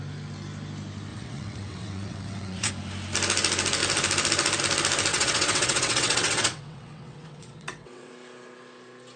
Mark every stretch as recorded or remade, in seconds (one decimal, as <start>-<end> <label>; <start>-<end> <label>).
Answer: 0.0-1.1 recorded; 1.1-2.7 remade; 2.7-5.1 recorded; 5.1-8.1 remade; 8.1-9.2 recorded